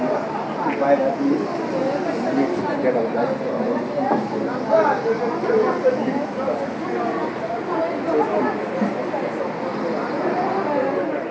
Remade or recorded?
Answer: recorded